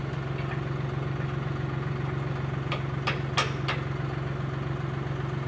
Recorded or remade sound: recorded